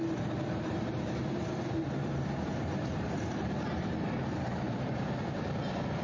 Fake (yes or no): yes